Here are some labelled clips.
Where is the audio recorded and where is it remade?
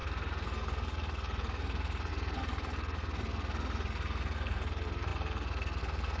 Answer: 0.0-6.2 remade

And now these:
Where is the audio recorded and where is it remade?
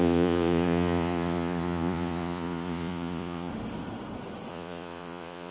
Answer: 0.0-3.5 remade; 3.5-4.5 recorded; 4.5-5.5 remade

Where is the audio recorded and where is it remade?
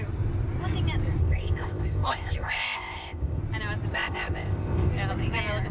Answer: 0.0-1.2 recorded; 1.2-3.4 remade; 3.4-3.9 recorded; 3.9-4.9 remade; 4.9-5.7 recorded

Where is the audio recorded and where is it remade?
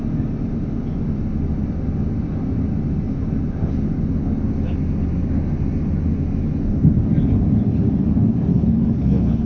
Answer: 0.0-8.5 recorded; 8.5-9.5 remade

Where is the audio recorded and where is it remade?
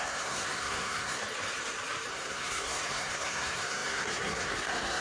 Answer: 0.0-1.2 remade; 1.2-2.1 recorded; 2.1-5.0 remade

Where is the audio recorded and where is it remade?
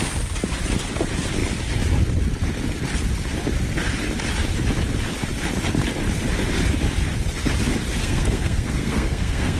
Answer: 0.0-8.0 recorded; 8.0-9.6 remade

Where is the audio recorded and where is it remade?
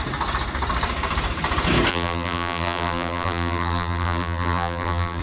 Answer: 0.0-1.9 recorded; 1.9-5.2 remade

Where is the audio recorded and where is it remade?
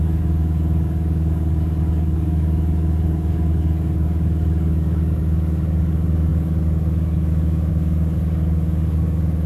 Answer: 0.0-9.5 remade